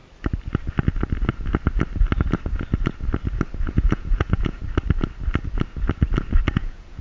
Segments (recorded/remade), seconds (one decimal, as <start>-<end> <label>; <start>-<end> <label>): 0.0-3.7 recorded; 3.7-4.6 remade; 4.6-6.5 recorded; 6.5-7.0 remade